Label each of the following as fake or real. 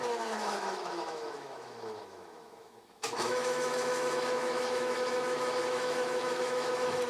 fake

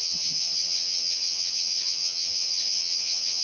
fake